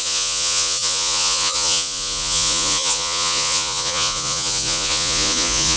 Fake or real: fake